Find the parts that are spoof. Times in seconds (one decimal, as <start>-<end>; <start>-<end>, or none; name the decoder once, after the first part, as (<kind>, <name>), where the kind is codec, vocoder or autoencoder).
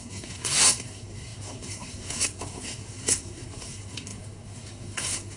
0.0-5.4 (codec, SNAC)